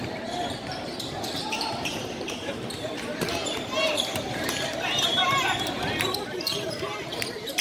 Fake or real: fake